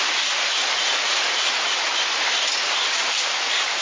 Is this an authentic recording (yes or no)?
yes